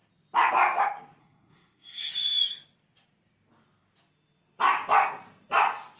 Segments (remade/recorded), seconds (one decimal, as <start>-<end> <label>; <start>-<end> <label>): 0.0-1.2 recorded; 1.2-2.1 remade; 2.1-6.0 recorded